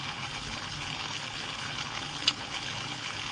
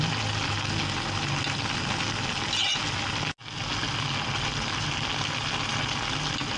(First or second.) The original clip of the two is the second